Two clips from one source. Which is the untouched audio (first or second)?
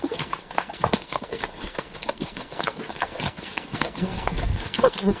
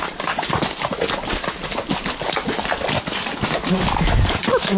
second